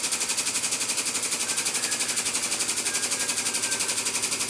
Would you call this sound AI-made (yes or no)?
yes